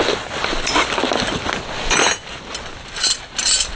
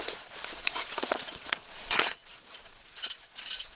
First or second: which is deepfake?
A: second